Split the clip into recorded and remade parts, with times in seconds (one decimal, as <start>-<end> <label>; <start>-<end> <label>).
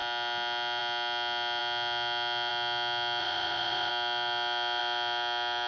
0.0-3.2 recorded; 3.2-3.9 remade; 3.9-5.7 recorded